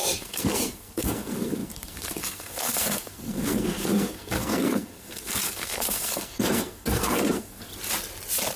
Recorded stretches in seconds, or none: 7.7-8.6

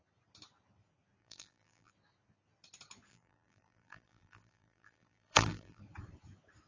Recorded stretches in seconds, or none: 0.0-1.2; 1.9-3.1; 5.8-6.7

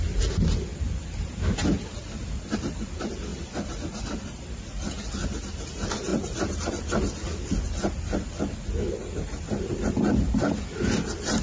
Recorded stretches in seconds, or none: 0.0-11.4

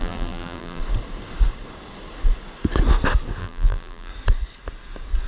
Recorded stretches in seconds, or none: 0.8-3.4; 4.1-5.3